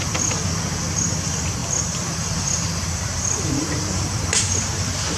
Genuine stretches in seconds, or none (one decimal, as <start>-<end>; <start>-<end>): 0.0-1.6; 4.7-5.2